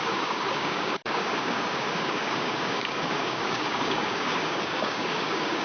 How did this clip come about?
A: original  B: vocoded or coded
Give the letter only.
B